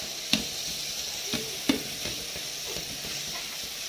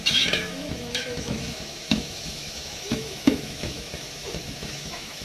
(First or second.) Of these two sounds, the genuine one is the first